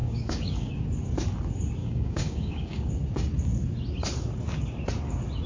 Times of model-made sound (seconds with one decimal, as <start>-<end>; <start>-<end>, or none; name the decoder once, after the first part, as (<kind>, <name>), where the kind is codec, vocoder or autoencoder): 0.0-0.7 (codec, DAC); 1.8-2.9